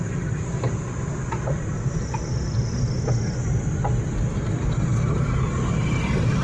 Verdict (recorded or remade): recorded